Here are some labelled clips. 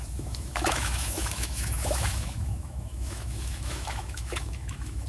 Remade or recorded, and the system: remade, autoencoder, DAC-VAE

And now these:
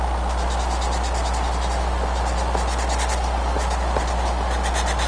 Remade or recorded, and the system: recorded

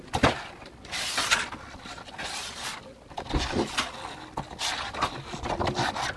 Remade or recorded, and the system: recorded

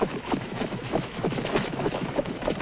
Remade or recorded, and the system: remade, autoencoder, DAC-VAE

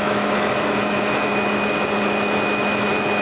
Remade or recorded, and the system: remade, autoencoder, DAC-VAE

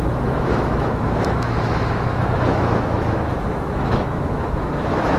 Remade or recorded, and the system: remade, autoencoder, DAC-VAE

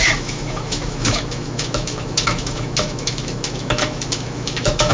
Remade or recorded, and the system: remade, autoencoder, DAC-VAE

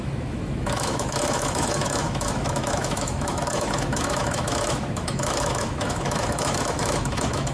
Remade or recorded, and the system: remade, autoencoder, DAC-VAE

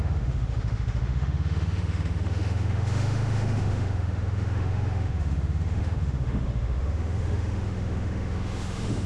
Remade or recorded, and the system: remade, autoencoder, DAC-VAE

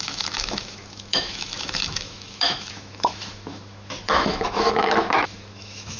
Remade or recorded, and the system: remade, autoencoder, DAC-VAE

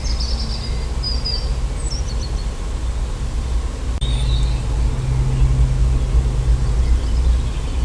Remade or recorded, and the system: recorded